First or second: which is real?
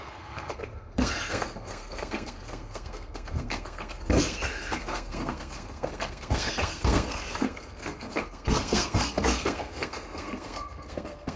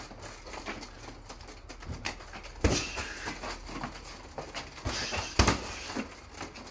second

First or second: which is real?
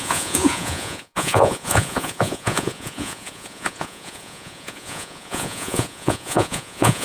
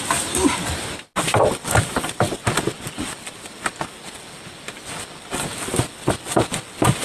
second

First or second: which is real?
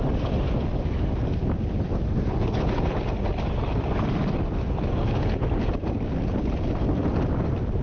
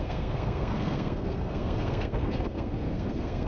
first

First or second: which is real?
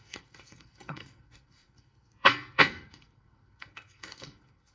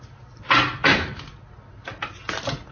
second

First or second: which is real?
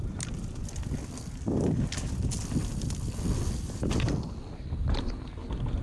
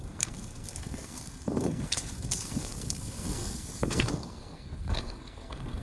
first